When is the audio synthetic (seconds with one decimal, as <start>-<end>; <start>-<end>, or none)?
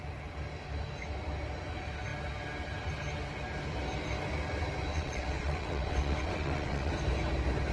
4.9-6.9